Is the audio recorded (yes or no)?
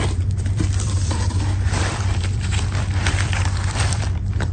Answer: no